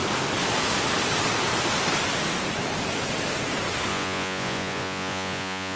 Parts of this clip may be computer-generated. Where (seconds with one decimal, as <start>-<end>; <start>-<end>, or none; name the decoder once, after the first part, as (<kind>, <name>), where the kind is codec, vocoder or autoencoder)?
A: 3.9-5.8 (vocoder, Vocos)